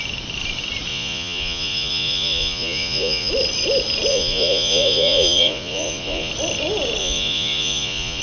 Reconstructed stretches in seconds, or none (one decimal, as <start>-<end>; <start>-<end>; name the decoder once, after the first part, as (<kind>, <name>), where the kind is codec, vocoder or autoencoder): 0.9-3.3 (vocoder, Vocos); 4.1-6.3; 7.0-8.2